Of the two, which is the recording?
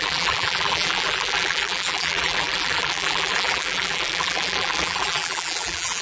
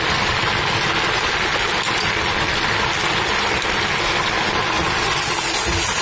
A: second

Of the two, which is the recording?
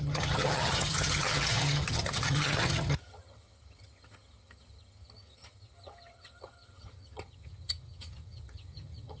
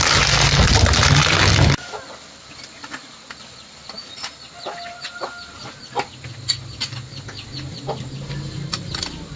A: second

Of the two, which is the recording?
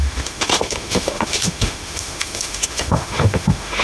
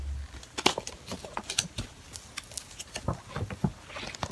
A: second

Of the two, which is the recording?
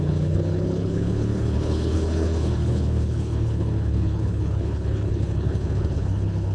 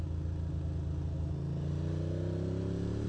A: second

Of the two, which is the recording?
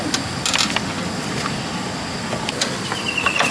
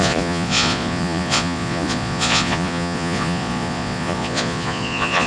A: first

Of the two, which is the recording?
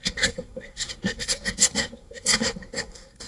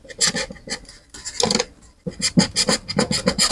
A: second